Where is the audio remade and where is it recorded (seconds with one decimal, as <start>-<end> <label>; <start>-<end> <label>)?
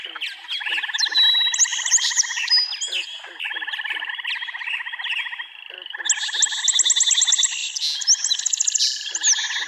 0.0-9.7 recorded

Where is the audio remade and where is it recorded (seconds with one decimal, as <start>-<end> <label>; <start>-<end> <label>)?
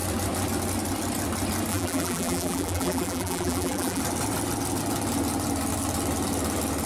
0.0-1.7 recorded; 1.7-4.0 remade; 4.0-6.9 recorded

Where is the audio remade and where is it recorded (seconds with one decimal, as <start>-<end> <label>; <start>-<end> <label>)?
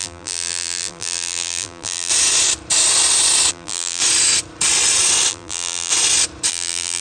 0.0-2.1 remade; 2.1-3.5 recorded; 3.5-4.0 remade; 4.0-5.3 recorded; 5.3-5.9 remade; 5.9-6.5 recorded; 6.5-7.0 remade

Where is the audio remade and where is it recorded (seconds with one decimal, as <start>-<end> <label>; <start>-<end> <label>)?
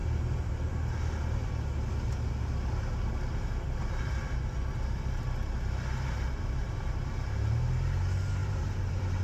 0.0-0.7 remade; 0.7-8.4 recorded; 8.4-9.2 remade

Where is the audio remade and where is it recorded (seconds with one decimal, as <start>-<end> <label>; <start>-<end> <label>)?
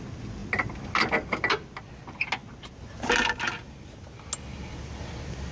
0.0-5.5 recorded